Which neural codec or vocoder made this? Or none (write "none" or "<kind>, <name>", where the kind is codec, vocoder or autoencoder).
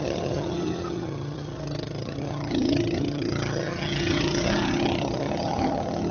vocoder, HiFi-GAN